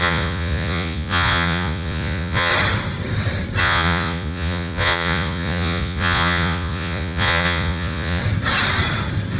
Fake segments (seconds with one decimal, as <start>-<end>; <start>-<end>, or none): 0.0-2.5; 3.6-8.2